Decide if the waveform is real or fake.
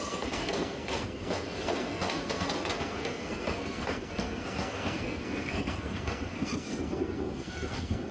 fake